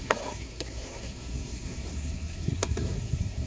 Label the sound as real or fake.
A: fake